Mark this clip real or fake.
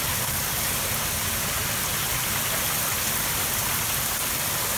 real